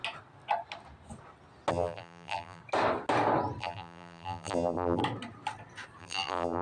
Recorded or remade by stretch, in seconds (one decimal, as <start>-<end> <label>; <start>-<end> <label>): 0.0-1.7 recorded; 1.7-2.6 remade; 2.6-3.6 recorded; 3.6-5.0 remade; 5.0-6.0 recorded; 6.0-6.6 remade